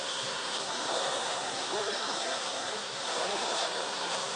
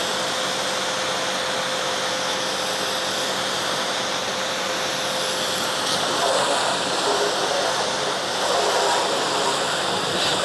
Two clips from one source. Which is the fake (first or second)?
first